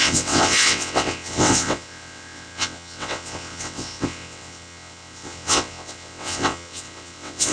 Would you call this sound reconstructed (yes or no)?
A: yes